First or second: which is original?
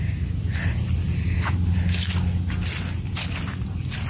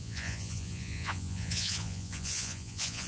first